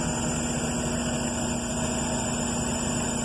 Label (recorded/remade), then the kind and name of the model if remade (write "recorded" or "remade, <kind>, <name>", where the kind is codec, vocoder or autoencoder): recorded